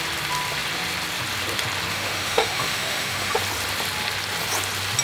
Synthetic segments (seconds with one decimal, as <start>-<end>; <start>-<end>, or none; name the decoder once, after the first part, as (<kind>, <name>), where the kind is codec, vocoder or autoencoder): 1.9-3.4 (autoencoder, DAC-VAE)